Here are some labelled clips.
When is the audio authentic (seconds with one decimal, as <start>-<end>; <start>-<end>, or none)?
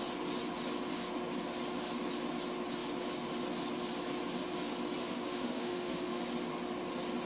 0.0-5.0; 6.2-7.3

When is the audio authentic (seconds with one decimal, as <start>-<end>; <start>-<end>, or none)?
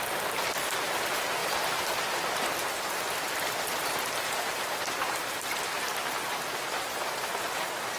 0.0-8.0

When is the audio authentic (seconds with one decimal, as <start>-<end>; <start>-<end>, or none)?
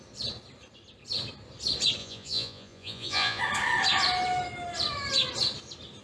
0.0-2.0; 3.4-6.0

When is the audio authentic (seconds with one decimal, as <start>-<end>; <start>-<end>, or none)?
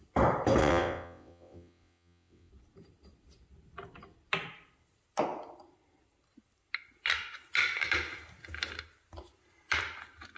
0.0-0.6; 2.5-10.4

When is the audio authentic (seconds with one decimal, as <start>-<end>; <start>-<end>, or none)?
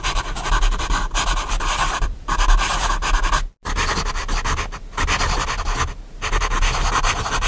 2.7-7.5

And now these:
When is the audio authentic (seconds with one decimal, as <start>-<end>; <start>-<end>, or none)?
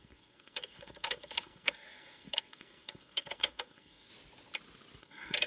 4.1-5.0